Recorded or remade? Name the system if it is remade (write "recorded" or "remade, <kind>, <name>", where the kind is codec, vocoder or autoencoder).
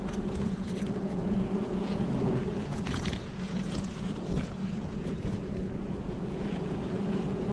remade, vocoder, Vocos